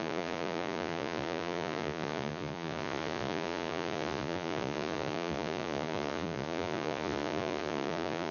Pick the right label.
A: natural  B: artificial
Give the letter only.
B